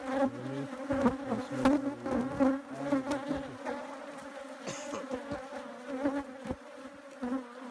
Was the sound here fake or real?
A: real